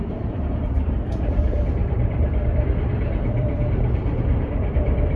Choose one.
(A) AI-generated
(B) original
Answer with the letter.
A